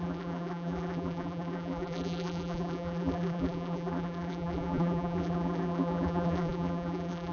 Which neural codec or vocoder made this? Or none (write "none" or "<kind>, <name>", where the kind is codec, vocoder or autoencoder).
vocoder, BigVGAN v2